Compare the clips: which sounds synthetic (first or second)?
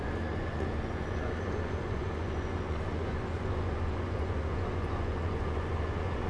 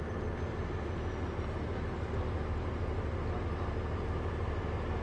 first